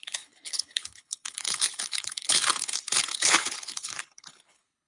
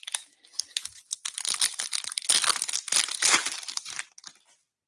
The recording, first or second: second